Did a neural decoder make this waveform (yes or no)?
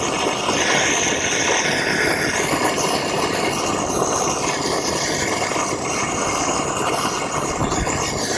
no